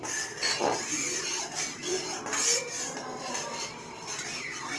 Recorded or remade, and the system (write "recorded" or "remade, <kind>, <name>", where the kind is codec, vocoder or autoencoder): recorded